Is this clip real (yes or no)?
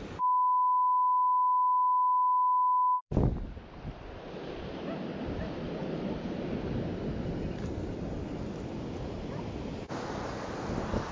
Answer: yes